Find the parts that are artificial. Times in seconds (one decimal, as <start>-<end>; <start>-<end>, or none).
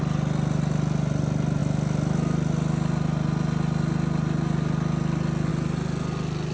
none